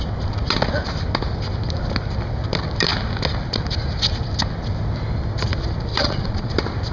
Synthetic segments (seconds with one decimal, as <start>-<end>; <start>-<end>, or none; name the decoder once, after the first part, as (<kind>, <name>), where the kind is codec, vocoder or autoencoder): 5.9-6.5 (vocoder, Vocos)

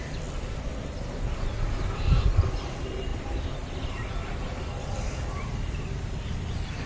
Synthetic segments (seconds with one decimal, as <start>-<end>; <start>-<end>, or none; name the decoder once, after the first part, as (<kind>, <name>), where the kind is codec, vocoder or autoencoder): none